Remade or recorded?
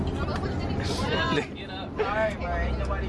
recorded